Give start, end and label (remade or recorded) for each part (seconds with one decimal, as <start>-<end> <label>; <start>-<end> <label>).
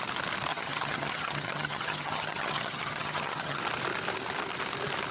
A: 0.0-0.5 recorded; 0.5-3.6 remade; 3.6-5.1 recorded